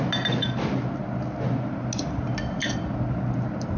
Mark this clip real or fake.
real